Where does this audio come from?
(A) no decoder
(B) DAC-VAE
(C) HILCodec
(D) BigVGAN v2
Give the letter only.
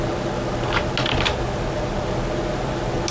A